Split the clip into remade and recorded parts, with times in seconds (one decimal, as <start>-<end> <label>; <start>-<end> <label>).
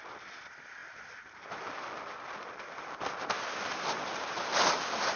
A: 0.0-5.2 recorded